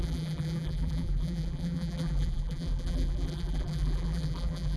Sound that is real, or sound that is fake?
fake